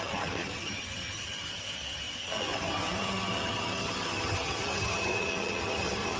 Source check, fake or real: fake